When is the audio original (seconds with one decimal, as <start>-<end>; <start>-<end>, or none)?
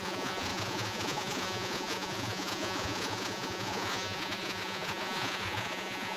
none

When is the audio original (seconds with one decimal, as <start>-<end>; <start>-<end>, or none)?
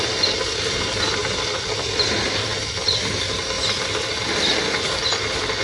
0.0-5.6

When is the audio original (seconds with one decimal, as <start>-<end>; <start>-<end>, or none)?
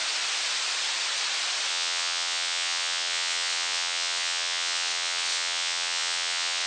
0.0-1.7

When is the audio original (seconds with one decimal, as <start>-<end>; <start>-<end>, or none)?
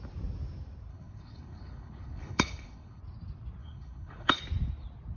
0.0-0.9; 3.0-3.6; 4.4-5.2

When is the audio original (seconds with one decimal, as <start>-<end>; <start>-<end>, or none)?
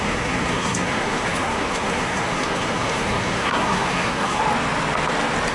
4.4-5.5